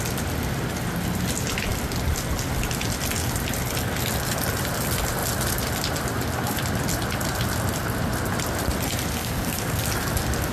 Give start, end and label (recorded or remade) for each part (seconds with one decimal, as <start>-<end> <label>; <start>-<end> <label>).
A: 0.0-9.2 recorded; 9.2-9.8 remade; 9.8-10.5 recorded